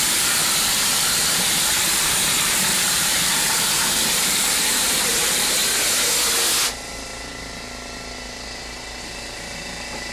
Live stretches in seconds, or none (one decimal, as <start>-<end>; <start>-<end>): 5.6-9.0